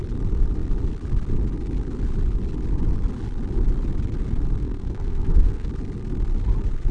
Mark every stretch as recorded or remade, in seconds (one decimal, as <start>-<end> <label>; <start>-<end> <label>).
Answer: 0.0-4.6 recorded; 4.6-5.7 remade; 5.7-6.9 recorded